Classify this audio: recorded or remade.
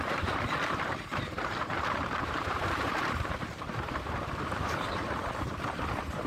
remade